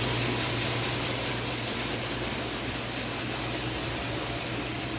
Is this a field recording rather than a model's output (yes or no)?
yes